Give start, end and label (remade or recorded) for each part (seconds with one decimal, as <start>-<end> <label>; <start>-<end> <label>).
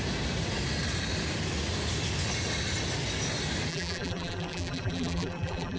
0.0-3.7 recorded; 3.7-5.8 remade